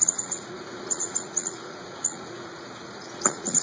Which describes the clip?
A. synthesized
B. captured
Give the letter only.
A